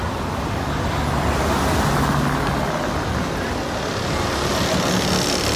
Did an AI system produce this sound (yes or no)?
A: no